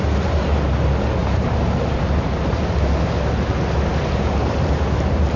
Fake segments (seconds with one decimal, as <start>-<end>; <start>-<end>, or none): 1.2-2.6; 3.9-5.4